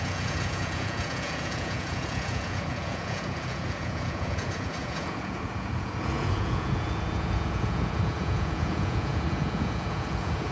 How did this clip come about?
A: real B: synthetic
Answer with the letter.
B